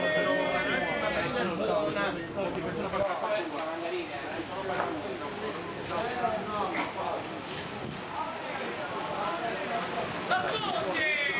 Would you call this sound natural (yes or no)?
yes